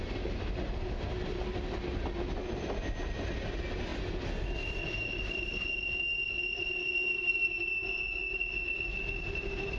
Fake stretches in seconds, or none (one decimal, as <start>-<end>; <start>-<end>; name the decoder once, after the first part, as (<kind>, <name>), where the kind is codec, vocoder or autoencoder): 3.9-7.3 (vocoder, BigVGAN v2)